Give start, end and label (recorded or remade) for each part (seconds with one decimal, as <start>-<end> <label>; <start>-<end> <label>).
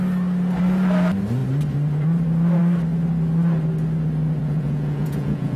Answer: 0.0-4.4 recorded; 4.4-5.6 remade